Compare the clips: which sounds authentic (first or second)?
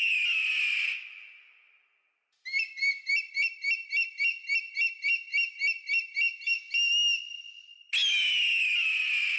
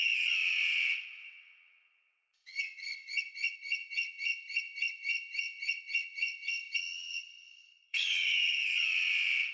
first